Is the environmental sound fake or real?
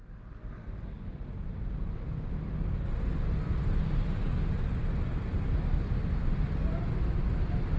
real